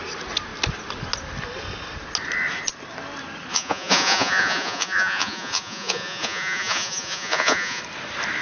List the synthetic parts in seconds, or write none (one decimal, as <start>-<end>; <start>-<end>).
3.5-7.8